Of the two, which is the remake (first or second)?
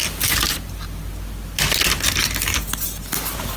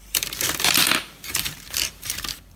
second